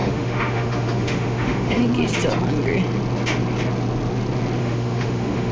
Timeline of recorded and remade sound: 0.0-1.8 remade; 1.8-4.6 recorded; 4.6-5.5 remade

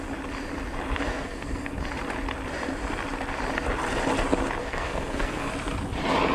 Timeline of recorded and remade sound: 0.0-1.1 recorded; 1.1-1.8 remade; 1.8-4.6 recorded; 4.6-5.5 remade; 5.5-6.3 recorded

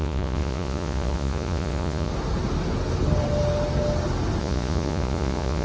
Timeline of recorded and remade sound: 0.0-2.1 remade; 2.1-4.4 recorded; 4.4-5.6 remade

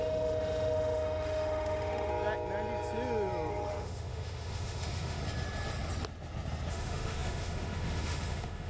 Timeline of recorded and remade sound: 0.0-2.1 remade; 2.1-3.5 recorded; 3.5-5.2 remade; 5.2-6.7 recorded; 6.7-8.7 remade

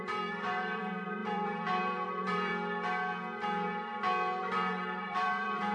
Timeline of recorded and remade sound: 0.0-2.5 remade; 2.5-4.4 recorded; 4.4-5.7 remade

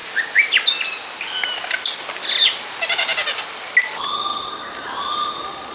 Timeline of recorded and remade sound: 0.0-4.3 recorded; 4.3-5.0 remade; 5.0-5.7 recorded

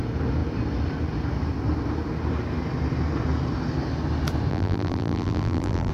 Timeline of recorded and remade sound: 0.0-4.5 recorded; 4.5-5.9 remade